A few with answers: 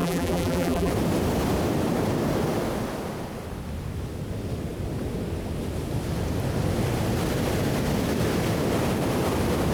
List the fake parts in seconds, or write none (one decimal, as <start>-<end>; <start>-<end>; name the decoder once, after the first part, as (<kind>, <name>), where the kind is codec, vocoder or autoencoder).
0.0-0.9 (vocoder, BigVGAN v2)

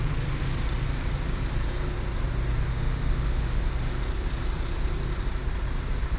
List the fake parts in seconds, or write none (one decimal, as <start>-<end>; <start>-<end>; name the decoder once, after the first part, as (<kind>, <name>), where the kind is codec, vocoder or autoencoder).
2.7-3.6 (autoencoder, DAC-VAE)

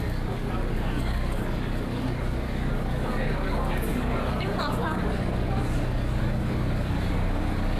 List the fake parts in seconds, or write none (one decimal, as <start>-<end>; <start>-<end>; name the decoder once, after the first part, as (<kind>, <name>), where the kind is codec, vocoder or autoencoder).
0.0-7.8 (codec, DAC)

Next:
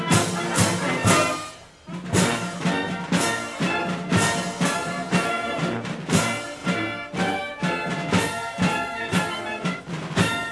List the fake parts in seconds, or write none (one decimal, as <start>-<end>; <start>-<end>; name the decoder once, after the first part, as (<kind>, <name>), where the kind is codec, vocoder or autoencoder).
none